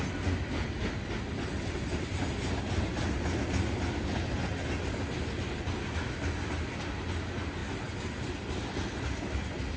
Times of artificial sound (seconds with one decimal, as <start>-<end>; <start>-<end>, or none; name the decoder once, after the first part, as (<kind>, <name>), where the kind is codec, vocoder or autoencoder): none